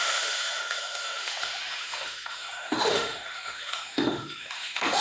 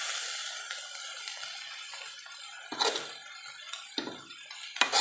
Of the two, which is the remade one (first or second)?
first